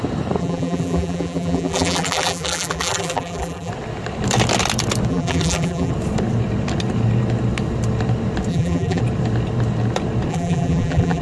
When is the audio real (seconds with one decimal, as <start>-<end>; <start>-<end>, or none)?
0.0-0.4; 3.7-5.1; 5.9-8.5; 9.0-10.3